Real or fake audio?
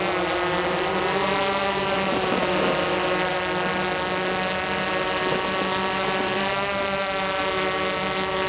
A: real